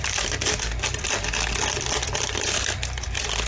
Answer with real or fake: real